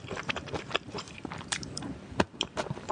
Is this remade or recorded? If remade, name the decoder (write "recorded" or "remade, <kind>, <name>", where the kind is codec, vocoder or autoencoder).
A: remade, vocoder, BigVGAN v2